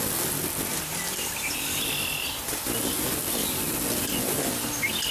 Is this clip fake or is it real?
real